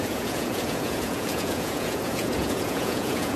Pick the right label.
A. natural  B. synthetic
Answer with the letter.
B